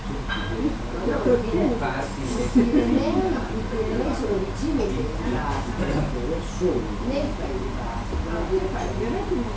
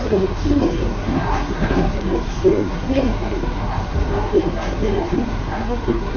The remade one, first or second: second